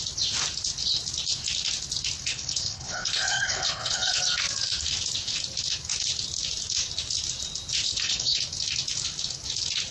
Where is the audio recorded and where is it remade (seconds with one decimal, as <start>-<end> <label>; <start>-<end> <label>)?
0.0-2.3 recorded; 2.3-4.2 remade; 4.2-7.7 recorded; 7.7-8.4 remade; 8.4-9.9 recorded